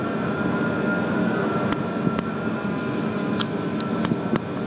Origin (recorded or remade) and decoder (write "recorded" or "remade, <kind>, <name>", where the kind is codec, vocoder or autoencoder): recorded